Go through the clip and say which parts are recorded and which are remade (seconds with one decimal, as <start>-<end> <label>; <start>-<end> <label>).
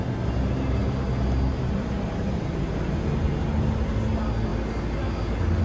0.0-5.6 recorded